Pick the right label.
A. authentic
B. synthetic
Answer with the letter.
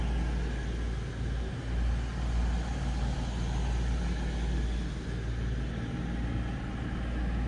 A